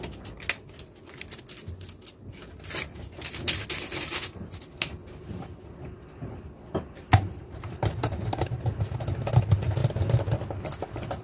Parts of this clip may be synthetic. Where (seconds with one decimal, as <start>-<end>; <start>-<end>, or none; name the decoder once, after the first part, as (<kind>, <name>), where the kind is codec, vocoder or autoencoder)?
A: none